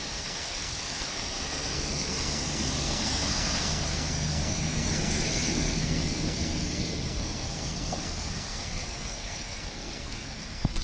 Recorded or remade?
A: remade